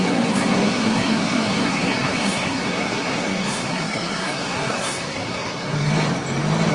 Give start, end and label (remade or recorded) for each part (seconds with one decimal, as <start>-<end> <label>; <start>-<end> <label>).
0.0-5.9 remade; 5.9-6.7 recorded